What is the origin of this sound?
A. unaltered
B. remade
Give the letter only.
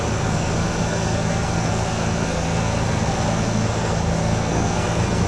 B